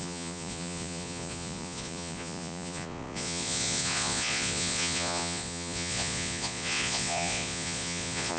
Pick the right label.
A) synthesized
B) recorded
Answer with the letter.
A